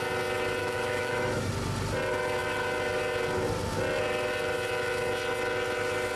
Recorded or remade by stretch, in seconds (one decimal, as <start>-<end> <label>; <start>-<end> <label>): 0.0-0.6 recorded; 0.6-1.5 remade; 1.5-6.2 recorded